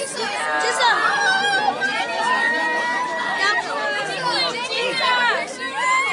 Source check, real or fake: real